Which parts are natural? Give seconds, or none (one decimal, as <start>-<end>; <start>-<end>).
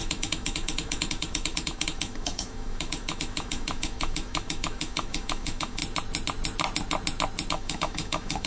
5.8-7.5